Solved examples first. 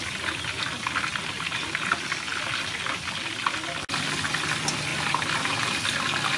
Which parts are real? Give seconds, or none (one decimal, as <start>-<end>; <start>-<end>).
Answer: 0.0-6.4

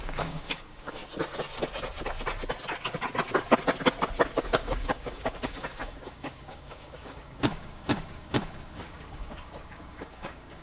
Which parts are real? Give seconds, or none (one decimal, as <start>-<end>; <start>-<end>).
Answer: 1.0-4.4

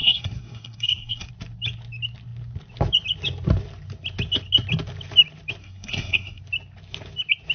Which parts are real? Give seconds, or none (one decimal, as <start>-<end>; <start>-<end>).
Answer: 1.3-5.6; 6.4-7.5

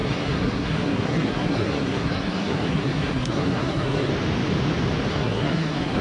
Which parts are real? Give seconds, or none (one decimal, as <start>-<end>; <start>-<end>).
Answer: 4.1-5.1

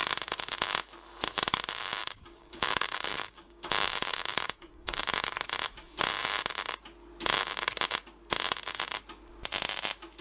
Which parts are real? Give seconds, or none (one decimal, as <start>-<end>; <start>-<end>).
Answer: 0.0-2.0; 5.0-10.2